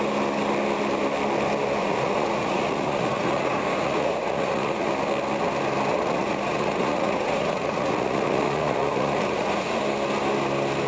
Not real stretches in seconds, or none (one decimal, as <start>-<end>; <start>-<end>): 1.8-4.9; 5.9-9.8